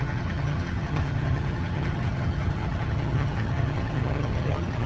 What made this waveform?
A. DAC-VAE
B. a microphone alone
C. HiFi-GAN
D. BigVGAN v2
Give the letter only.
C